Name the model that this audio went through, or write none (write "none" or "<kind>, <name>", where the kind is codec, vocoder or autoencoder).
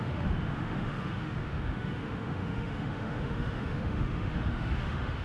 autoencoder, DAC-VAE